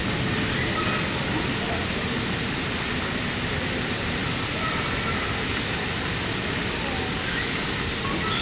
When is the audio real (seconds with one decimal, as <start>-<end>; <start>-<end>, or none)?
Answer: 0.0-8.4